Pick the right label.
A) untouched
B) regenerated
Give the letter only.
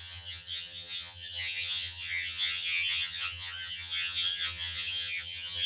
B